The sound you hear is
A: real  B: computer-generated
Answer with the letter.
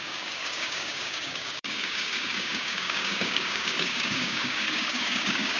B